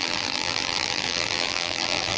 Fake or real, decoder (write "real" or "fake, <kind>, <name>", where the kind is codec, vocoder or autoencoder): fake, vocoder, BigVGAN v2